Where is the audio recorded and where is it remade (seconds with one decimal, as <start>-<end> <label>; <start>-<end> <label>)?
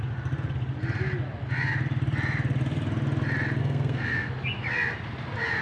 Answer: 0.0-3.6 recorded; 3.6-4.3 remade; 4.3-5.6 recorded